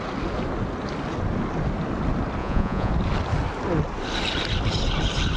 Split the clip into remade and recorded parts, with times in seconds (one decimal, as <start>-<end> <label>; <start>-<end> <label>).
0.0-2.4 recorded; 2.4-2.9 remade; 2.9-5.4 recorded